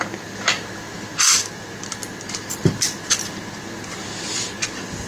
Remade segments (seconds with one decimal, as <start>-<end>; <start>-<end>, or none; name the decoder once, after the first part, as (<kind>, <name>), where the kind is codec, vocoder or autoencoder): none

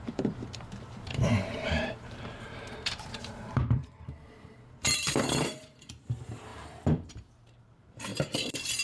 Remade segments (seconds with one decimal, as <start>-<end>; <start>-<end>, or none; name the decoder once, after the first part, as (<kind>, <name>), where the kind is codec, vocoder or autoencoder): 0.0-8.1 (vocoder, BigVGAN v2)